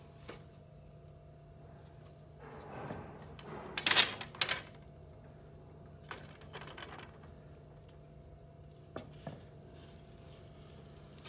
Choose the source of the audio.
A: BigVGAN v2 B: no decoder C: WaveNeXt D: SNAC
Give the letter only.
B